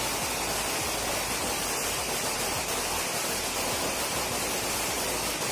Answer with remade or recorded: recorded